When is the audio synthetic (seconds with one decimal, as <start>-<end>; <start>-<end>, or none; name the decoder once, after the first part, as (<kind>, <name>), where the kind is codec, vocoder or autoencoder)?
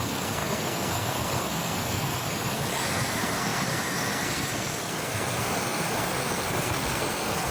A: 0.0-7.5 (codec, SNAC)